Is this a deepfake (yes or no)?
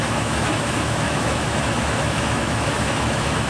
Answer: yes